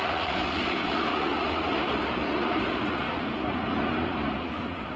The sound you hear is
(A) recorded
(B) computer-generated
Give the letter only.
B